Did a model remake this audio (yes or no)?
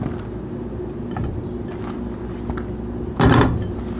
no